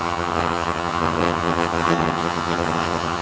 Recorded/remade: remade